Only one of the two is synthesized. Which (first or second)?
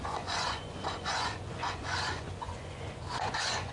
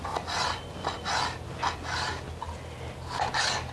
first